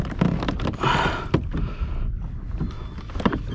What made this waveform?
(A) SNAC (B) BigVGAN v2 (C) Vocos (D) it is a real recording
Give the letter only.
D